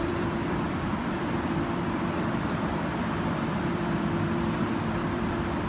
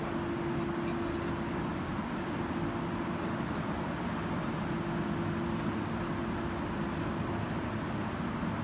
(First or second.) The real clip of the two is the second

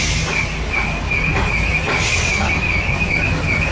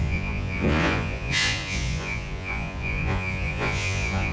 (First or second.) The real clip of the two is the first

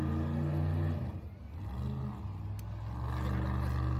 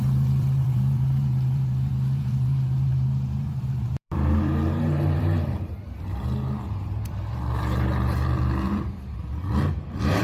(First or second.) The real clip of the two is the first